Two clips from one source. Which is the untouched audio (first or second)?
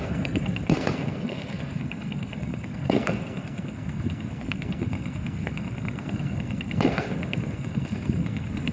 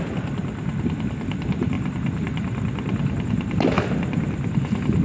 second